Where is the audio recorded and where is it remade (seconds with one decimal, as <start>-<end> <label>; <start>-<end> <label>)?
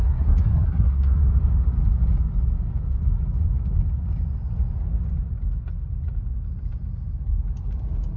0.0-1.2 remade; 1.2-8.2 recorded